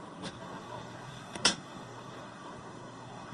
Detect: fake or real fake